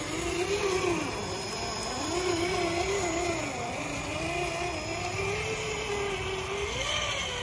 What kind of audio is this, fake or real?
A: real